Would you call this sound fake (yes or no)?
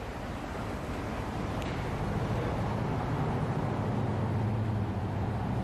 no